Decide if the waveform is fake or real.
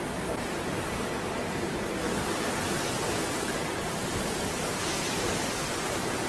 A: real